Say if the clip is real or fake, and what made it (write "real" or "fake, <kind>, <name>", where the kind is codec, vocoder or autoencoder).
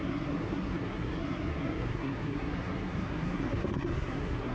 fake, codec, SNAC